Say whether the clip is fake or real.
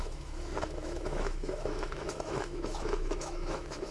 fake